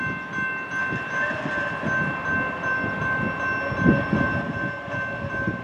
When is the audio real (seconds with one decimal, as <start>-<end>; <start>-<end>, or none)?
0.0-5.6